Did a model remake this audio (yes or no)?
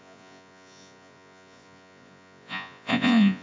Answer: yes